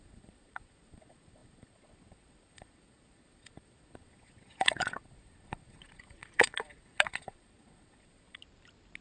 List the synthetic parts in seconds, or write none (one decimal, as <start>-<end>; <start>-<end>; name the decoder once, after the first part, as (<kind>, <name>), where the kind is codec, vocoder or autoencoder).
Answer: 0.0-8.4 (vocoder, Vocos)